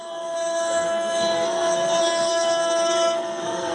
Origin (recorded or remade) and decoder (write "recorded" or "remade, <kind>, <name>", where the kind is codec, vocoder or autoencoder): remade, codec, SNAC